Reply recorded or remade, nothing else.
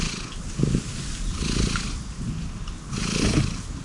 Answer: recorded